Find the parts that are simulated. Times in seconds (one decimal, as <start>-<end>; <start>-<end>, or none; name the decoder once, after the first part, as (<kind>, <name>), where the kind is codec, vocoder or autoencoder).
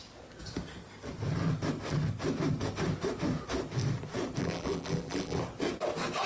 4.4-5.4 (vocoder, BigVGAN v2)